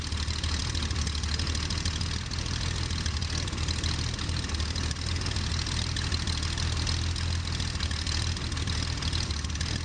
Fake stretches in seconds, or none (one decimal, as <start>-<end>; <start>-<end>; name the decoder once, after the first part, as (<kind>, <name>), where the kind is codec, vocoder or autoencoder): none